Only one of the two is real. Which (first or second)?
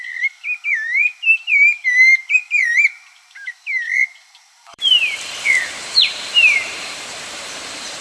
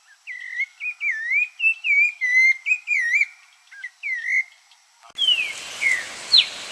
second